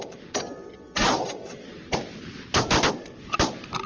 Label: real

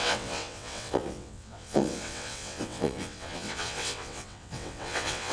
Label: fake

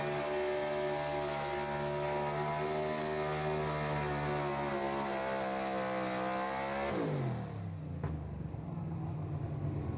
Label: real